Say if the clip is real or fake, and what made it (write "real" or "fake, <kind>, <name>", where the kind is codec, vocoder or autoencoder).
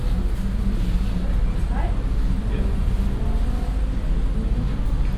real